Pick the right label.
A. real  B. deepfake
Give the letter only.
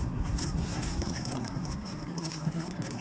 B